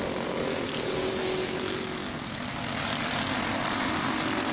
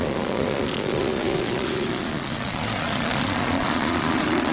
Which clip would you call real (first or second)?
first